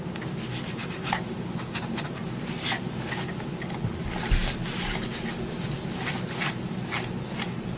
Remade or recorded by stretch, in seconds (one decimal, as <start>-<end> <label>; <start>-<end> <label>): 0.0-7.8 recorded